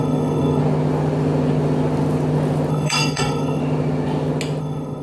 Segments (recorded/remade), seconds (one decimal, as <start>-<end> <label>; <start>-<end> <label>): 0.0-0.6 remade; 0.6-2.7 recorded; 2.7-3.6 remade; 3.6-4.6 recorded; 4.6-5.0 remade